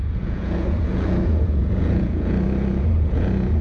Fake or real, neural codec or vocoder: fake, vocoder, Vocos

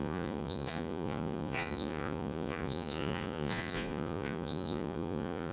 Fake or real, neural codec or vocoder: fake, vocoder, Vocos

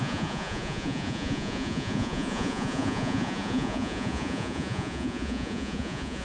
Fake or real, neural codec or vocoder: fake, vocoder, Vocos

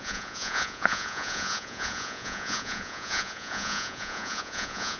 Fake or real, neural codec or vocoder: fake, vocoder, Vocos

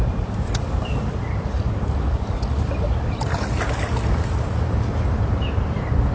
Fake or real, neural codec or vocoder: real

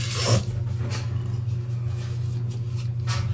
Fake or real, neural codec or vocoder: real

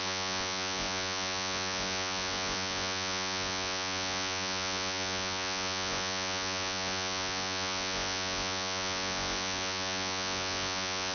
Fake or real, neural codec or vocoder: fake, vocoder, Vocos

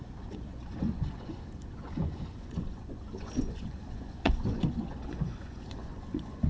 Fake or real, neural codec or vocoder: fake, vocoder, Vocos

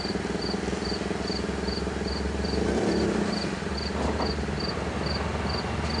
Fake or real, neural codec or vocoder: real